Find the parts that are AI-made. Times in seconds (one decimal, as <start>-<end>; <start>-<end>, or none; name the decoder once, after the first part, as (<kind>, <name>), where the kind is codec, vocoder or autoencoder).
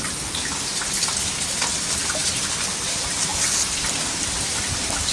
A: none